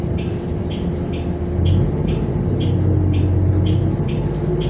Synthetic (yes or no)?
no